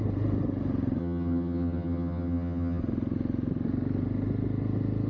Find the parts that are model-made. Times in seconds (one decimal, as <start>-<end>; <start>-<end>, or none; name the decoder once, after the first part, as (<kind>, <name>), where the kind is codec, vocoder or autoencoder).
1.0-2.8 (vocoder, HiFi-GAN)

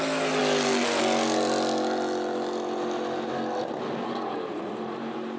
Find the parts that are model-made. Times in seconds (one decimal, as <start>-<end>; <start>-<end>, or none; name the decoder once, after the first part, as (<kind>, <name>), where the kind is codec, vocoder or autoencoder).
none

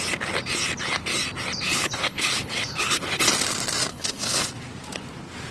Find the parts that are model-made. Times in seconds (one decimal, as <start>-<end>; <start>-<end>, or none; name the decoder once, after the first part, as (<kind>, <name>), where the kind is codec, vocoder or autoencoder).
1.7-3.2 (codec, HILCodec); 3.9-4.5

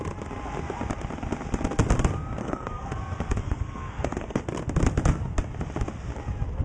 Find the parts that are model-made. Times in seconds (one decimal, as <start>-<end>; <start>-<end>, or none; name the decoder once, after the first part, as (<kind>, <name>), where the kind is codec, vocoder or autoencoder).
2.4-2.9 (codec, SNAC); 3.4-4.4

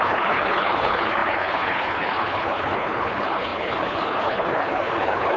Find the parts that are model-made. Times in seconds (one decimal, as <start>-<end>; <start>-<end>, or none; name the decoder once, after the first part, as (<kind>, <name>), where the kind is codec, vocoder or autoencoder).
0.0-5.4 (codec, HILCodec)